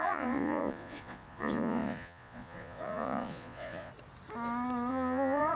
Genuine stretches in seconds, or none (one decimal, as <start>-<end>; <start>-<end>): 3.9-4.9